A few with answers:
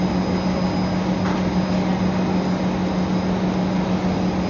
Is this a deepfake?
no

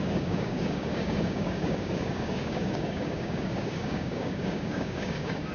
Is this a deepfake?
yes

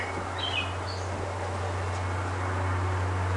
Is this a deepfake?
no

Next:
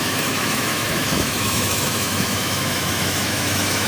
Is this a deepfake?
yes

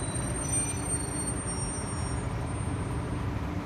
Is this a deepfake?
no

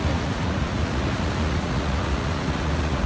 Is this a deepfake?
yes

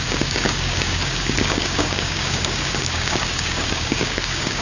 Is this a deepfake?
yes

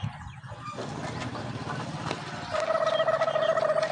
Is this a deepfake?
no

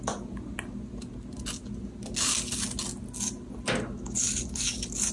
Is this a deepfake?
no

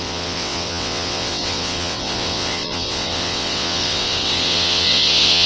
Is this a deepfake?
yes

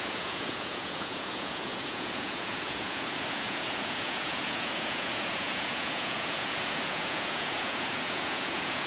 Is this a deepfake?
yes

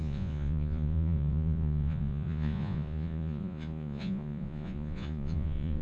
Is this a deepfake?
yes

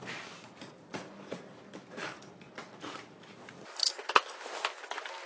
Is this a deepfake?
no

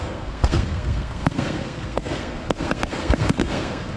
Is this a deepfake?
yes